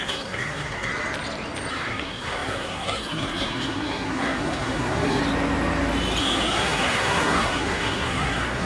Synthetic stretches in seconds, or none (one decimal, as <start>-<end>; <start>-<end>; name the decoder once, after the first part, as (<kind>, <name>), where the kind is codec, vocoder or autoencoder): 0.0-0.9 (codec, SNAC); 1.7-5.2; 6.2-8.7